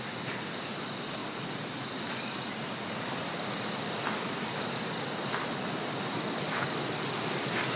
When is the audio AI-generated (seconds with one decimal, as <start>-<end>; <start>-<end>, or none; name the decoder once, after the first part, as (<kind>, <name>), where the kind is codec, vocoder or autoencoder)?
none